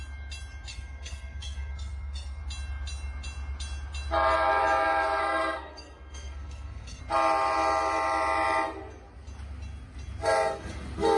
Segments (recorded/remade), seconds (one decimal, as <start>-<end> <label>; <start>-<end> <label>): 0.0-0.7 recorded; 0.7-2.4 remade; 2.4-5.2 recorded; 5.2-7.0 remade; 7.0-11.2 recorded